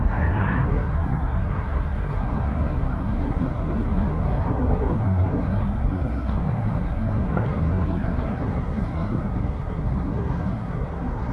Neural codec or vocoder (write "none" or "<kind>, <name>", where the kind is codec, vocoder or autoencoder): codec, SNAC